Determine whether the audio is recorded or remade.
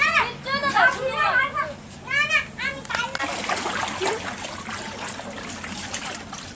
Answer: recorded